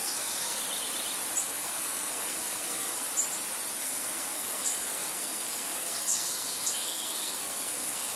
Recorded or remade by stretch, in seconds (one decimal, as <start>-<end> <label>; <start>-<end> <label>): 0.0-0.6 remade; 0.6-1.4 recorded; 1.4-3.1 remade; 3.1-3.8 recorded; 3.8-8.2 remade